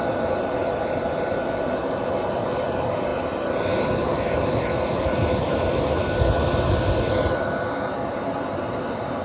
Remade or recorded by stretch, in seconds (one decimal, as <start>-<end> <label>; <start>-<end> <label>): 0.0-0.6 recorded; 0.6-1.4 remade; 1.4-9.2 recorded